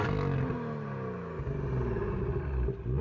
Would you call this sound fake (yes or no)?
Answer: no